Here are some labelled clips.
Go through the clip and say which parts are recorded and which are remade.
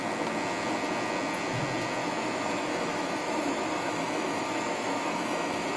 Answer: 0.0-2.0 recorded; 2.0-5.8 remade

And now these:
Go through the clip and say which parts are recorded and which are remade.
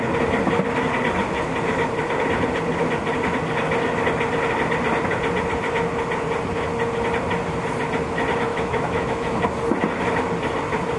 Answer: 0.0-8.5 recorded; 8.5-9.4 remade; 9.4-11.0 recorded